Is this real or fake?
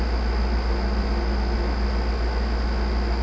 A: real